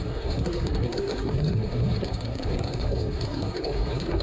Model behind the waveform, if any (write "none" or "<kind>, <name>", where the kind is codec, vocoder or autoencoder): codec, SNAC